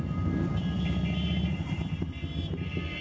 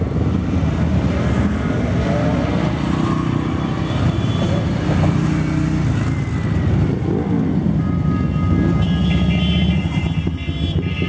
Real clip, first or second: second